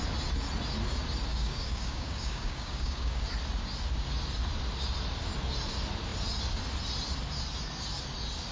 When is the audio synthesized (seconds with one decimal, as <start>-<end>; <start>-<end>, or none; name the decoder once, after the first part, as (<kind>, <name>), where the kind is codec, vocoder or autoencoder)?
1.3-3.2 (codec, DAC)